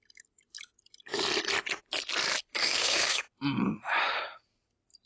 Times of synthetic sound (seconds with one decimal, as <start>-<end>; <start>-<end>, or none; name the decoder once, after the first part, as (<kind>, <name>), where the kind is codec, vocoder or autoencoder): 2.6-3.2 (autoencoder, DAC-VAE)